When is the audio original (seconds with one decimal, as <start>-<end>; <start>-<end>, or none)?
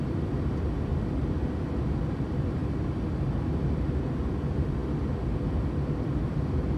0.9-1.6; 2.6-3.6; 4.8-5.7